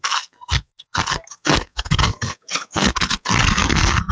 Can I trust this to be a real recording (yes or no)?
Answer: no